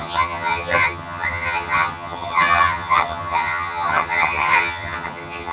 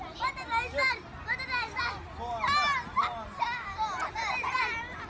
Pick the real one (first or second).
second